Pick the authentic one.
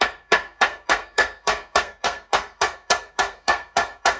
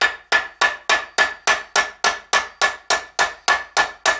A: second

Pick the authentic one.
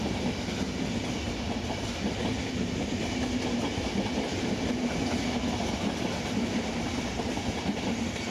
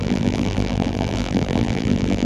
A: first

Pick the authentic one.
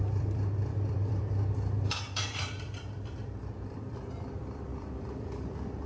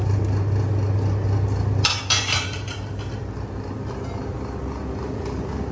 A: second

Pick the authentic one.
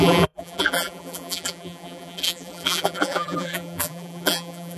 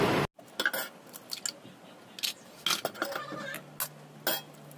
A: second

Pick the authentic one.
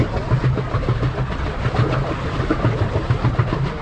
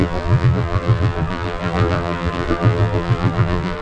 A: first